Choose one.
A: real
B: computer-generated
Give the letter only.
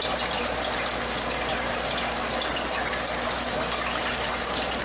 A